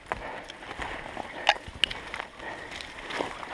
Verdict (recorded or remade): recorded